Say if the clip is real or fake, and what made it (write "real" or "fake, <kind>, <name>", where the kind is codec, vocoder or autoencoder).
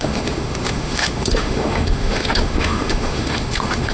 fake, autoencoder, DAC-VAE